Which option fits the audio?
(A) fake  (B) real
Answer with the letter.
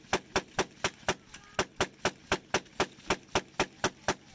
B